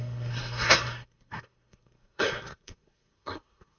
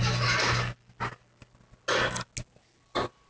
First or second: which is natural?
second